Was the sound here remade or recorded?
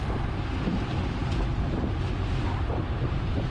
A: remade